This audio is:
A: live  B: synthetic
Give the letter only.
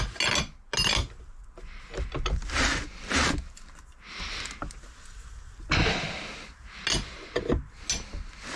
A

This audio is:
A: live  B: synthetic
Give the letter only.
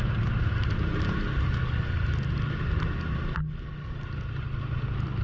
A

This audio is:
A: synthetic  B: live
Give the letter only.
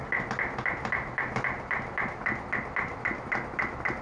B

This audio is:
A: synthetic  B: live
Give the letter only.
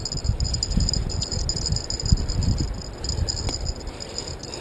B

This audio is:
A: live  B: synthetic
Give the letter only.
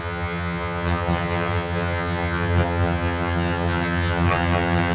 B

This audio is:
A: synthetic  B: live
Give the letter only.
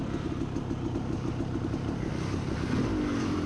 B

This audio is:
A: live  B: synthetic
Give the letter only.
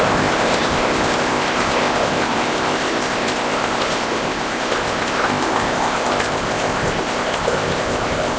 B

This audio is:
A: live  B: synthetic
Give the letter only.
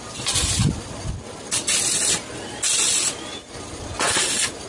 A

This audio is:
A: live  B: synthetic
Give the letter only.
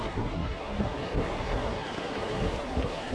B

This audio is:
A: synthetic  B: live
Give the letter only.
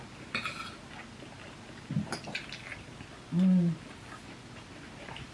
B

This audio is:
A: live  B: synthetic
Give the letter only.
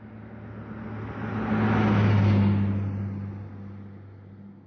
A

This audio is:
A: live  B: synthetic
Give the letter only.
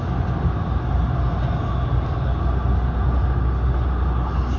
A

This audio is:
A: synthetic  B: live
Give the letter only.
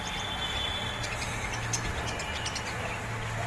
B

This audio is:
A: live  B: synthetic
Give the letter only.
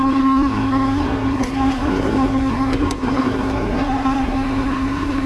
B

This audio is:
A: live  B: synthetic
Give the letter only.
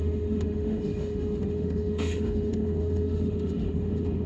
B